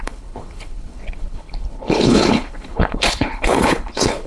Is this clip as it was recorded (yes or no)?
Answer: no